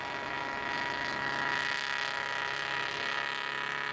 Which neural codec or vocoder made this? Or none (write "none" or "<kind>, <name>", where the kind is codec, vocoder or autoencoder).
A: none